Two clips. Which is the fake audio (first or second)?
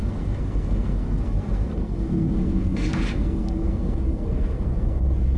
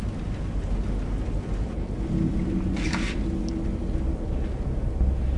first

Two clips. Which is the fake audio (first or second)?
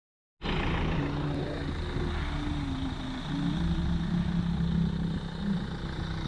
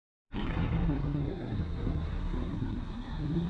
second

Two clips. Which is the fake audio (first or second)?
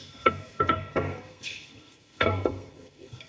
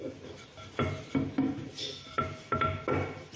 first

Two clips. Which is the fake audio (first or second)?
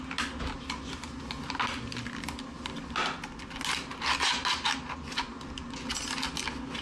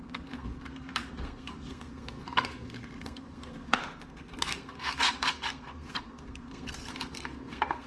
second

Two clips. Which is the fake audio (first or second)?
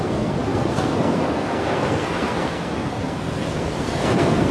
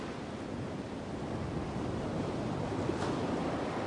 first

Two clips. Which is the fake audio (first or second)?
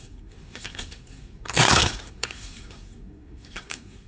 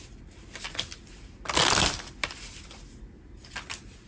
first